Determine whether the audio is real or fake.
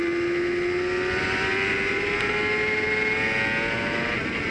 real